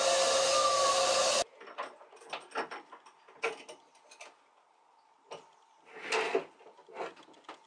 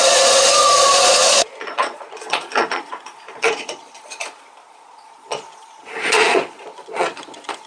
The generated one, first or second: second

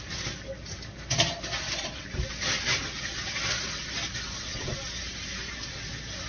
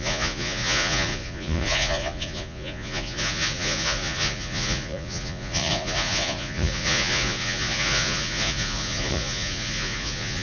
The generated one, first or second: second